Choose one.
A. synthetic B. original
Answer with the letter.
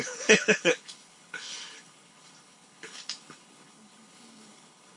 A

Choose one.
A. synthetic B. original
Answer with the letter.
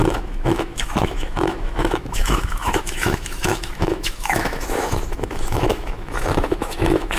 A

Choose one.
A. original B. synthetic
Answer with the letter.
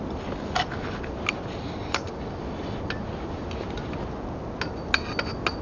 A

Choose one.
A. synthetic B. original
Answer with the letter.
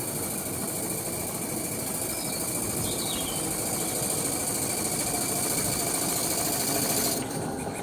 B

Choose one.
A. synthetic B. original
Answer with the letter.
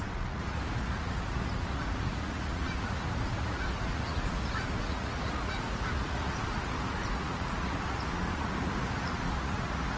A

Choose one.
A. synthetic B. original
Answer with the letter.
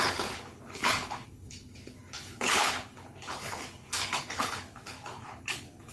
A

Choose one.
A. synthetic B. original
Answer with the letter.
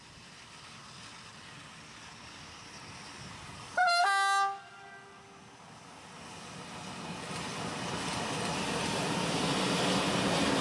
B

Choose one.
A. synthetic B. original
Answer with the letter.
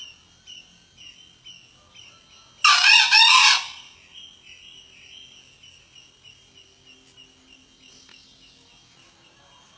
B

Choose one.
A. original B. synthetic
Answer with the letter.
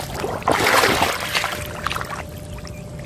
A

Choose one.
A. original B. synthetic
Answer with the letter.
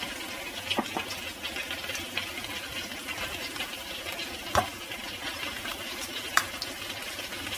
A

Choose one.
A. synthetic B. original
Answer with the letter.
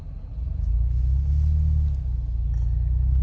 B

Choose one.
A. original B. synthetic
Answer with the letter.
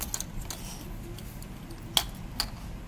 A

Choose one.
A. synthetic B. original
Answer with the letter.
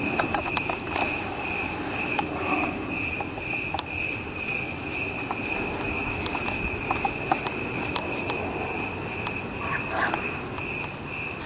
B